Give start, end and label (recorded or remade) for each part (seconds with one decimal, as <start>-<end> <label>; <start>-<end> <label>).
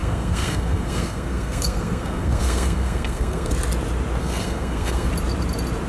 0.0-3.5 remade; 3.5-4.2 recorded; 4.2-5.1 remade; 5.1-5.9 recorded